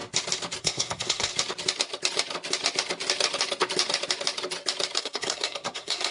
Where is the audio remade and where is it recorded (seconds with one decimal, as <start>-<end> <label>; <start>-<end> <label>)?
0.0-0.6 recorded; 0.6-1.3 remade; 1.3-5.0 recorded; 5.0-6.1 remade